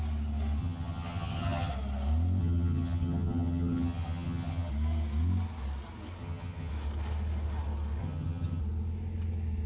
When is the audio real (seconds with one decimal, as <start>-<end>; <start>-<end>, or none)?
0.0-0.6; 1.7-2.4; 4.7-6.2; 6.7-8.0; 8.6-9.7